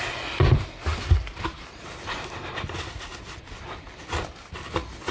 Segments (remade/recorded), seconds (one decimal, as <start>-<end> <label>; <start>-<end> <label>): 0.0-0.9 recorded; 0.9-4.0 remade; 4.0-5.1 recorded